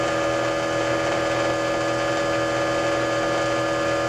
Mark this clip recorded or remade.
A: recorded